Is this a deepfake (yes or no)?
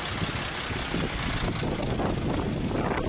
no